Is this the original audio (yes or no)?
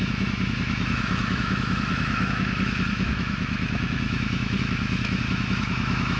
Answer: no